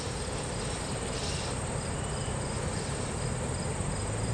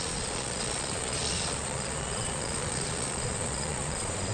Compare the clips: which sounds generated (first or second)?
second